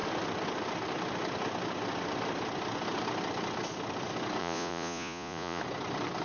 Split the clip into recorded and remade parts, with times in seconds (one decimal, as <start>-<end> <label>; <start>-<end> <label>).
0.0-4.4 recorded; 4.4-5.6 remade; 5.6-6.2 recorded